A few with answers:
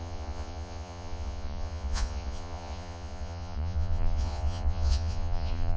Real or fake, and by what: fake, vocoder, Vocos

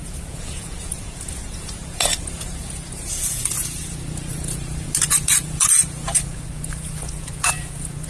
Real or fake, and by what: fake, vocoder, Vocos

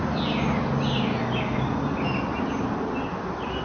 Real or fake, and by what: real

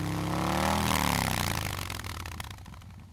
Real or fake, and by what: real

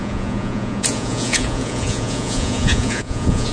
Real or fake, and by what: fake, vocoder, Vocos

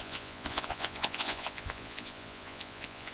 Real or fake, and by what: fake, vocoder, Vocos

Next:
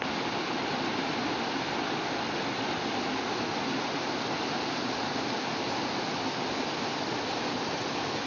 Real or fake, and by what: real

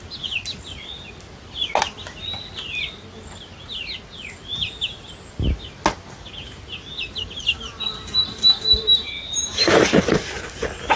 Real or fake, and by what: real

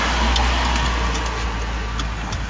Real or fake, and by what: real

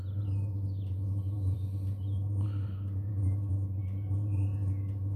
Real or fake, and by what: real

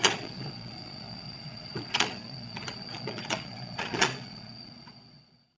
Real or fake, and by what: fake, vocoder, Vocos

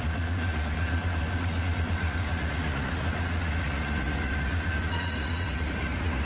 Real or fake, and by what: fake, vocoder, Vocos